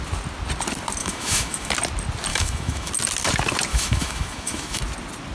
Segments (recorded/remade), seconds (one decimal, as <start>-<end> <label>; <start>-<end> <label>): 0.0-1.0 recorded; 1.0-1.7 remade; 1.7-2.3 recorded; 2.3-2.9 remade; 2.9-3.7 recorded; 3.7-4.8 remade; 4.8-5.3 recorded